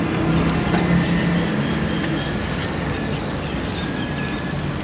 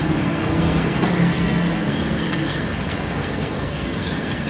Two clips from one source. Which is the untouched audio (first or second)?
first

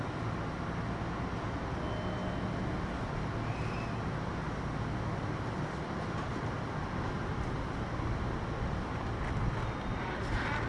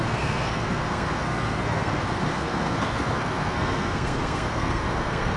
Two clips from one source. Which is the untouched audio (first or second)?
first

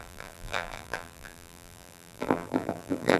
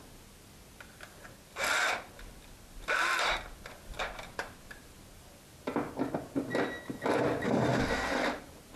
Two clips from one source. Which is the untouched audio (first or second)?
second